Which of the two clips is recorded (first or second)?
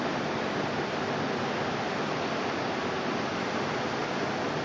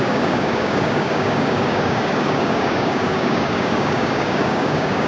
first